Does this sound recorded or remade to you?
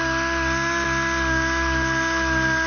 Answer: recorded